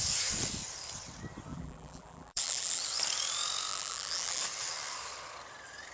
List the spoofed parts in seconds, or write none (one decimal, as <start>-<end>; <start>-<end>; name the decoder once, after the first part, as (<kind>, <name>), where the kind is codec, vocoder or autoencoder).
1.5-2.8 (vocoder, BigVGAN v2); 3.7-4.4